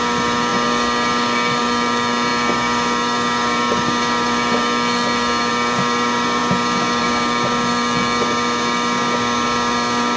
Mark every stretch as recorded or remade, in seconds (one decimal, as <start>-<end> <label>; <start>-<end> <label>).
0.0-10.2 remade